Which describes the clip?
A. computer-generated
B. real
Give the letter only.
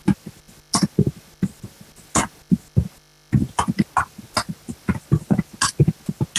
B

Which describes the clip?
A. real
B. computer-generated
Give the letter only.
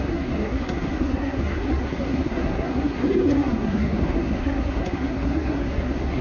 B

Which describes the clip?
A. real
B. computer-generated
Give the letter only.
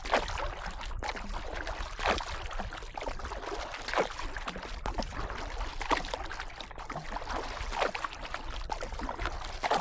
A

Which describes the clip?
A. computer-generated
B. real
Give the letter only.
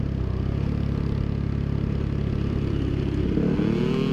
B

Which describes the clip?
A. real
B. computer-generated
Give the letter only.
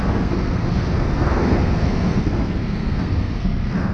B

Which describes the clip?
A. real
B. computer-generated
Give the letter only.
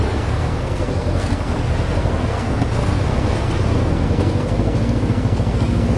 B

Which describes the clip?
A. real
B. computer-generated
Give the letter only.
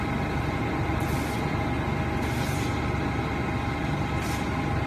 A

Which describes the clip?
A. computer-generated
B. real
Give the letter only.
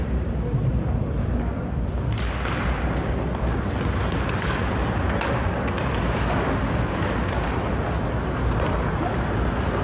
B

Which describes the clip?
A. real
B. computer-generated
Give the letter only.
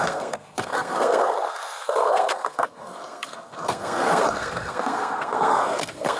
B